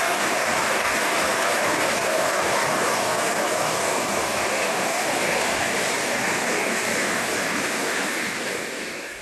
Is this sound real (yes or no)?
no